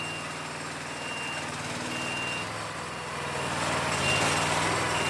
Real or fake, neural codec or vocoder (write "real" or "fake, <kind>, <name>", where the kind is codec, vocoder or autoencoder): real